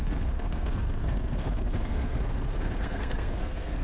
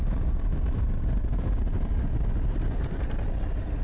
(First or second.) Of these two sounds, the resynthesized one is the first